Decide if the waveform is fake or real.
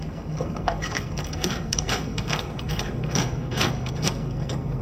fake